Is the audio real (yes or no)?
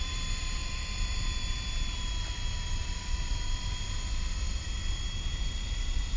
no